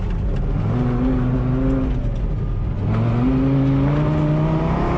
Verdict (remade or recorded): recorded